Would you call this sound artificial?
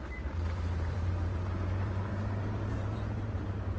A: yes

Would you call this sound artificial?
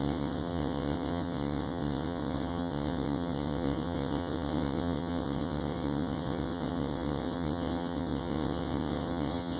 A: yes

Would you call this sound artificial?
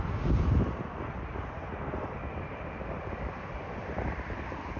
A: yes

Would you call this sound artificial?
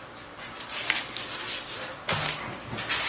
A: no